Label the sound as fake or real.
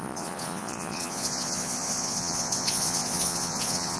fake